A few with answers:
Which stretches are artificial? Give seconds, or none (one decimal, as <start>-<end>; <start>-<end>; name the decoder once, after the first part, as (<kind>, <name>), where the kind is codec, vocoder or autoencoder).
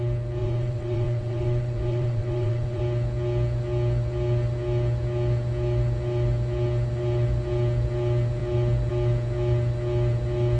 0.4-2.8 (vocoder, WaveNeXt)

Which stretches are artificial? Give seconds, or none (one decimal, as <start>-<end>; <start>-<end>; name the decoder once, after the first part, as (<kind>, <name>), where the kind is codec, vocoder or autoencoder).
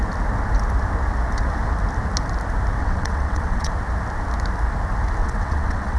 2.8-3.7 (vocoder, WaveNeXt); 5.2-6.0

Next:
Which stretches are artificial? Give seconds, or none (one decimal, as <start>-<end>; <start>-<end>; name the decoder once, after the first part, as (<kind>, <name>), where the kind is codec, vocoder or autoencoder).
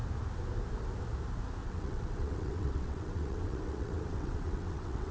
1.6-5.1 (vocoder, WaveNeXt)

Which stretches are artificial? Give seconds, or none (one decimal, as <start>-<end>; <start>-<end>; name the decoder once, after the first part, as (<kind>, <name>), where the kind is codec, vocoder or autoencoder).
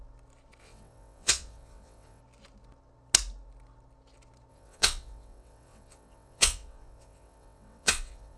0.6-2.2 (vocoder, WaveNeXt); 4.5-8.4